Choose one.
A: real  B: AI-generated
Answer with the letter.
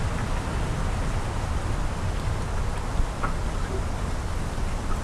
A